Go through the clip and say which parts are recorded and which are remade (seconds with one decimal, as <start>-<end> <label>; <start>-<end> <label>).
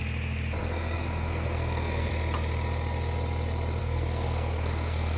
0.0-0.6 recorded; 0.6-2.1 remade; 2.1-3.8 recorded; 3.8-5.2 remade